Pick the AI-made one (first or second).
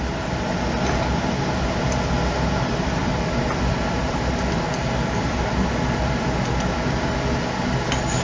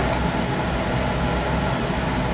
first